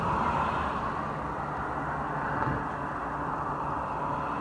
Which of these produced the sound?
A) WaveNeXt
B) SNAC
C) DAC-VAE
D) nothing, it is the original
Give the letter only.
D